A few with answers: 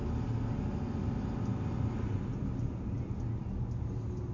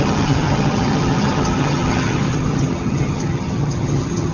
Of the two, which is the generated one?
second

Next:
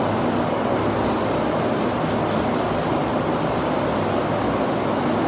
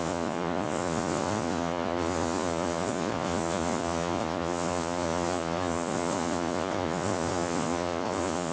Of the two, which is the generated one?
second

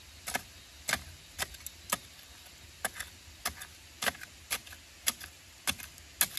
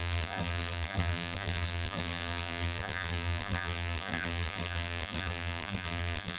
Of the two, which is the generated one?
second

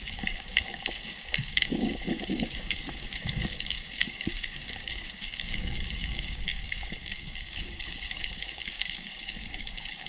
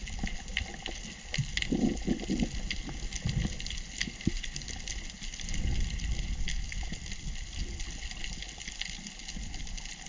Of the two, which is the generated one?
first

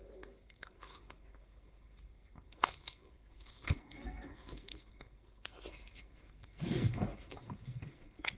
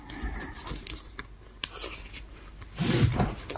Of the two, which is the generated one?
first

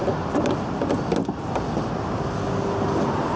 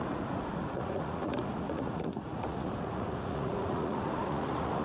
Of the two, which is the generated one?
second